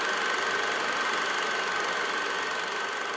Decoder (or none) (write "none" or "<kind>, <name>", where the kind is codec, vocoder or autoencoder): none